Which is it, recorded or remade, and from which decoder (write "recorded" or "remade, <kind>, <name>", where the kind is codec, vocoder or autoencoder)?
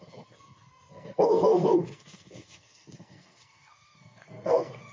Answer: remade, codec, SNAC